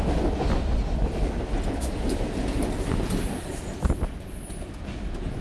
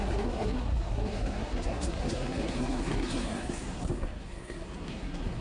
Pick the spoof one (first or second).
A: second